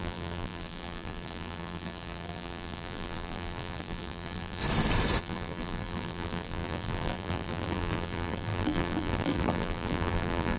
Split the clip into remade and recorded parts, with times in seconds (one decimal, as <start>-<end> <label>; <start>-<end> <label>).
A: 0.0-4.6 remade; 4.6-5.2 recorded; 5.2-10.6 remade